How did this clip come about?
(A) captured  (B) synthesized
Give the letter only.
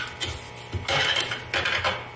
A